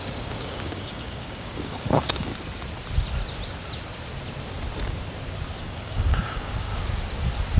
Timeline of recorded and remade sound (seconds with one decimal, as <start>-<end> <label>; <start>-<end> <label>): 0.0-2.3 remade; 2.3-5.6 recorded; 5.6-6.7 remade; 6.7-7.6 recorded